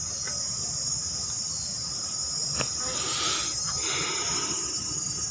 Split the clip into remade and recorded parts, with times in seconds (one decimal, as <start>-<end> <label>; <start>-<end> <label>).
0.0-5.3 recorded

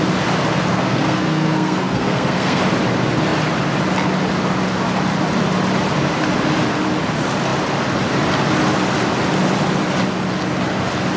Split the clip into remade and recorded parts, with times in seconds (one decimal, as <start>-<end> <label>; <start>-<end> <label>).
0.0-0.7 recorded; 0.7-2.6 remade; 2.6-11.2 recorded

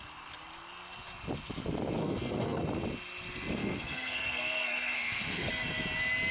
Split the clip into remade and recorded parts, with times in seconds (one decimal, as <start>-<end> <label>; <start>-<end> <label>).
0.0-2.0 recorded; 2.0-2.6 remade; 2.6-3.6 recorded; 3.6-5.5 remade; 5.5-6.3 recorded

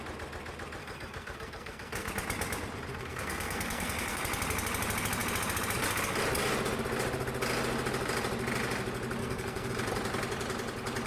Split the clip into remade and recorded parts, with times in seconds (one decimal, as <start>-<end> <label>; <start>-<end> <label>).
0.0-0.8 recorded; 0.8-2.1 remade; 2.1-2.9 recorded; 2.9-4.2 remade; 4.2-9.2 recorded; 9.2-9.7 remade; 9.7-11.1 recorded

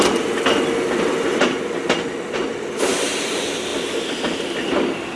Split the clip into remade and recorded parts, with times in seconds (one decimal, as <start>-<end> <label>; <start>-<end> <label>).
0.0-5.2 recorded

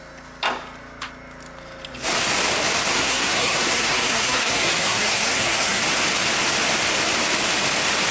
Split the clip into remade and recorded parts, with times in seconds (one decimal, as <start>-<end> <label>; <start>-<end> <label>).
0.0-2.9 recorded; 2.9-5.8 remade; 5.8-8.1 recorded